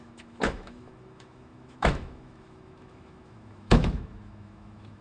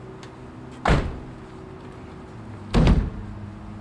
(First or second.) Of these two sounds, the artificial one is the first